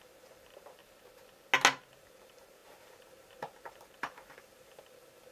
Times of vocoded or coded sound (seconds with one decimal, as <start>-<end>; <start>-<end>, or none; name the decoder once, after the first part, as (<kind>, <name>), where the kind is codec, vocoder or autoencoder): 0.0-0.8 (vocoder, BigVGAN v2); 1.9-5.3